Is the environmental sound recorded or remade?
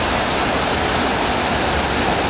recorded